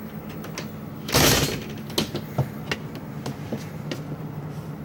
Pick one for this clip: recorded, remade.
recorded